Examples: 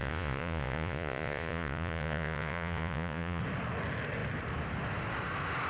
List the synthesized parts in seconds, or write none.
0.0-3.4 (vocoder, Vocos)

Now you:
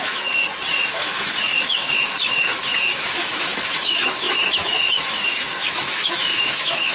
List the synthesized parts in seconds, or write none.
0.0-0.4 (autoencoder, DAC-VAE); 0.9-6.9

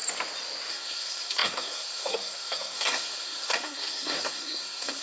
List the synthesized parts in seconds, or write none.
0.7-5.0 (codec, SNAC)

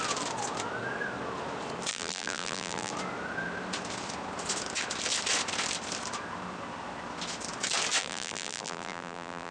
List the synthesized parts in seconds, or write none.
1.9-2.9 (vocoder, BigVGAN v2); 8.0-9.5